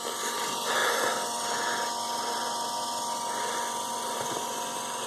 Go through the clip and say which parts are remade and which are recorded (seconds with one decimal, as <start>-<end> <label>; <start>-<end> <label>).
0.0-5.1 recorded